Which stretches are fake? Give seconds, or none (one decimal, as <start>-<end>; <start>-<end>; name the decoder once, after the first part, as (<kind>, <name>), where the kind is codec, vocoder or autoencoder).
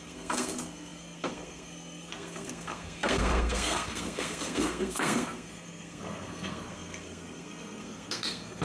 0.0-8.6 (codec, SNAC)